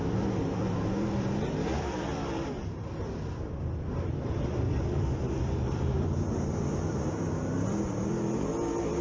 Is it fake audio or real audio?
fake